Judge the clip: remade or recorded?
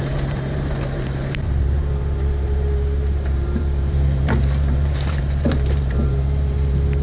remade